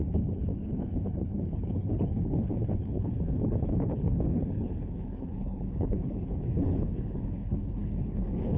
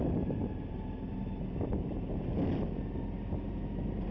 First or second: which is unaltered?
second